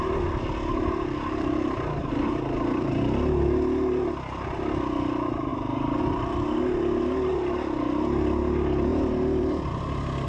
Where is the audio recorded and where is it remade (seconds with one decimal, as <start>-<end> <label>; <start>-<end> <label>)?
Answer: 0.0-0.4 recorded; 0.4-3.0 remade; 3.0-8.9 recorded; 8.9-9.7 remade; 9.7-10.3 recorded